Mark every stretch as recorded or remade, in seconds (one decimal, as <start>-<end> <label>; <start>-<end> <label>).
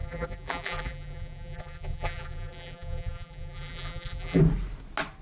0.0-4.4 remade; 4.4-5.2 recorded